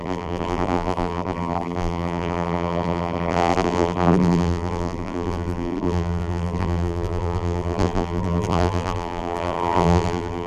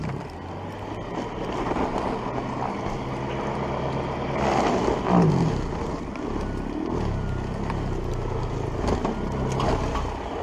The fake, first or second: first